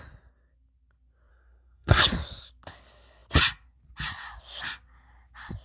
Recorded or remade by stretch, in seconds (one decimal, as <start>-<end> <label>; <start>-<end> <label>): 0.0-1.3 recorded; 1.3-2.0 remade; 2.0-5.6 recorded